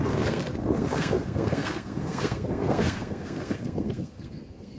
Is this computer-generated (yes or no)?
yes